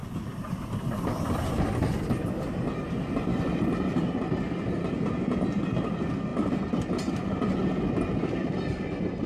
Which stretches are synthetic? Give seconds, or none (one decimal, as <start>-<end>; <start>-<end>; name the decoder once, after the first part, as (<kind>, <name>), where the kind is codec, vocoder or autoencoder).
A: none